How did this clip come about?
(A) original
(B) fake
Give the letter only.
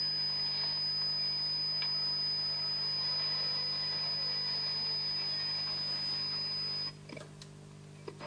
A